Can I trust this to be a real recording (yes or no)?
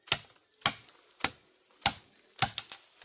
yes